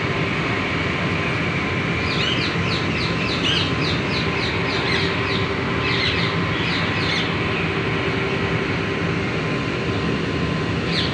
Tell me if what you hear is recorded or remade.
recorded